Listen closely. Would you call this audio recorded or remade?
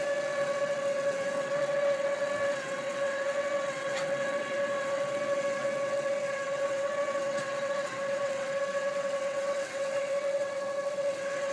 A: remade